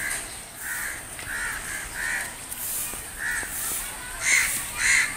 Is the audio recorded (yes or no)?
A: yes